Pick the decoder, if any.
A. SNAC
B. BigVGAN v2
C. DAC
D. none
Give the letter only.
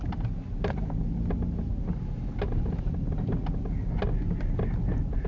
D